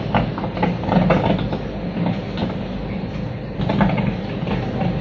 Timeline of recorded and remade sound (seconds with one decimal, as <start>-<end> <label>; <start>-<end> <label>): 0.0-5.0 recorded